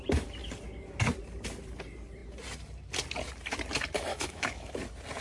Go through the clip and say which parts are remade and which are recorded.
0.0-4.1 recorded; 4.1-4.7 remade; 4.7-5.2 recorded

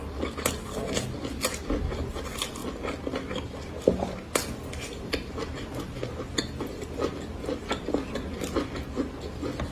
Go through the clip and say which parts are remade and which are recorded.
0.0-9.7 recorded

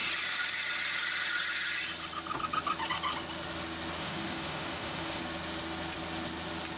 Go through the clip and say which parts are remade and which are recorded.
0.0-4.0 recorded; 4.0-5.2 remade; 5.2-6.8 recorded

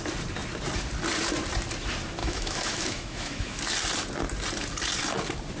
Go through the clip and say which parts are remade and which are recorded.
0.0-2.2 recorded; 2.2-3.6 remade; 3.6-5.6 recorded

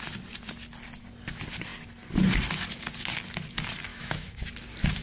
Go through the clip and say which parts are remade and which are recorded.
0.0-3.9 recorded; 3.9-4.4 remade; 4.4-5.0 recorded

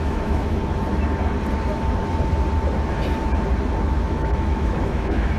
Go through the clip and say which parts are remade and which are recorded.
0.0-0.6 remade; 0.6-3.8 recorded; 3.8-5.4 remade